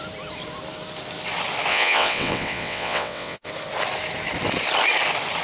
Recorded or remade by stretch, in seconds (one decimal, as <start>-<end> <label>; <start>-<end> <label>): 0.0-1.7 recorded; 1.7-3.5 remade; 3.5-5.4 recorded